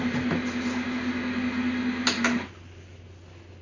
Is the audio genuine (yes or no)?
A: yes